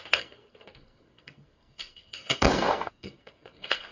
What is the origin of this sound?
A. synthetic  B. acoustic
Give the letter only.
A